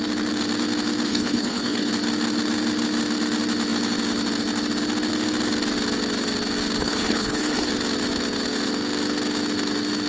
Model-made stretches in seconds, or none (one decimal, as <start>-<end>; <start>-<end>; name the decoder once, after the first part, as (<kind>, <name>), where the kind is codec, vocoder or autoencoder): 1.1-1.9 (codec, HILCodec); 6.8-7.7